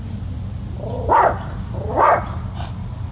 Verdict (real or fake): real